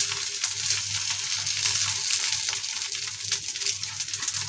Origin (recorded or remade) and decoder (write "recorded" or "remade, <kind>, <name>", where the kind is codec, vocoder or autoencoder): recorded